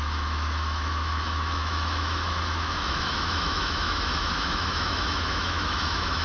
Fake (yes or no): yes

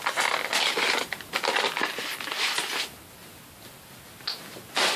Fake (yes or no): no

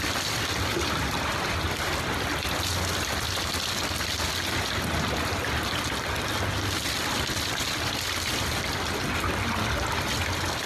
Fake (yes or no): no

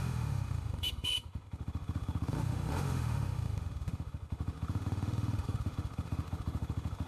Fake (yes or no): yes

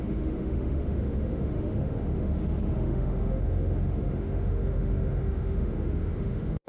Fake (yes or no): yes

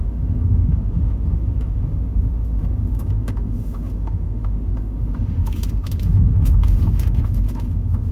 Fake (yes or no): yes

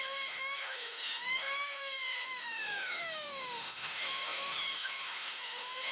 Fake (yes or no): yes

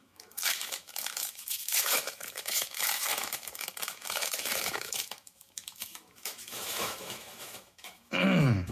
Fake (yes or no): yes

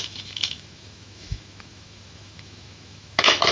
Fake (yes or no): yes